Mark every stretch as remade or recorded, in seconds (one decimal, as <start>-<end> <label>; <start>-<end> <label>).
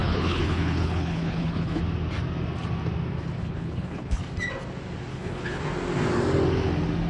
0.0-1.8 remade; 1.8-3.4 recorded; 3.4-4.2 remade; 4.2-5.1 recorded; 5.1-5.6 remade; 5.6-7.1 recorded